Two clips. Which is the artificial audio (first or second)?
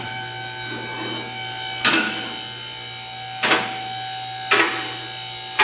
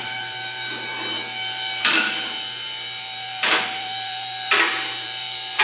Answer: second